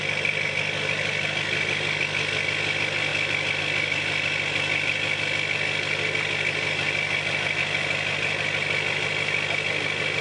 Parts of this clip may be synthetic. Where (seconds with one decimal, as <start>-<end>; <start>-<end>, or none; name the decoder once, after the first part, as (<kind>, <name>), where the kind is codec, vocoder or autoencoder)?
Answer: none